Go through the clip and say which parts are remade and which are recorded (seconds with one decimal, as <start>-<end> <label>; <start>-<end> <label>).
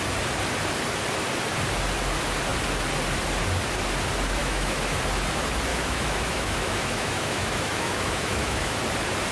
0.0-4.4 recorded; 4.4-5.0 remade; 5.0-5.7 recorded; 5.7-8.8 remade; 8.8-9.3 recorded